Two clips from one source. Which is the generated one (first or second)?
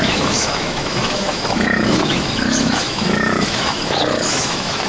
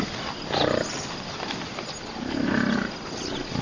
first